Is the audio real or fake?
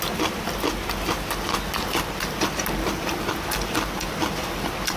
real